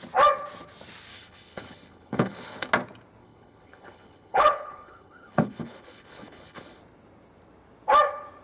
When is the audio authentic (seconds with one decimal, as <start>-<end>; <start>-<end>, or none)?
0.0-1.1; 2.7-3.2; 6.8-8.4